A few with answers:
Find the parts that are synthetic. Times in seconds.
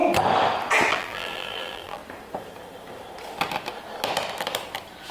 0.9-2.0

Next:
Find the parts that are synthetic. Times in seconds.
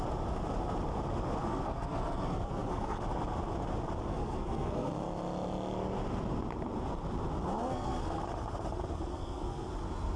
1.4-3.0; 4.1-4.9; 7.6-8.2; 9.1-9.7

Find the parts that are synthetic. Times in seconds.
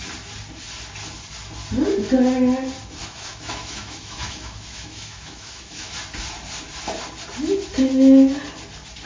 3.0-5.9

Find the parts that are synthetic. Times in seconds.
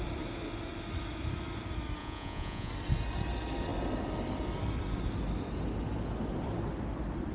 2.0-2.7